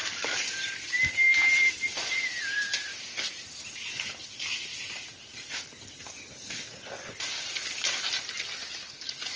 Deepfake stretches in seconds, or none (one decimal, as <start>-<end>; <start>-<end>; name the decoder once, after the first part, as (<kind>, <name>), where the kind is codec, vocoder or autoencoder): 0.0-3.3 (vocoder, BigVGAN v2)